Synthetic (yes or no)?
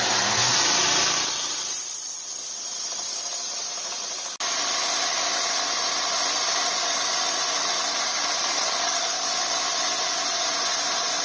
no